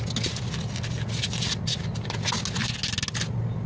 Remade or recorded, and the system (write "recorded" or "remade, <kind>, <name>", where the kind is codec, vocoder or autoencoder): recorded